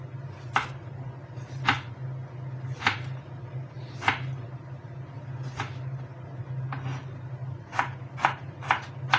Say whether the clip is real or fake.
real